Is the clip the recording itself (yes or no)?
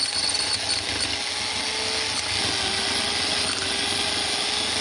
yes